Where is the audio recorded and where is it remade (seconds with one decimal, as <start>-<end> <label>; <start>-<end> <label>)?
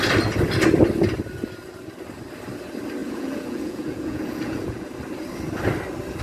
0.0-3.0 recorded; 3.0-4.9 remade; 4.9-6.2 recorded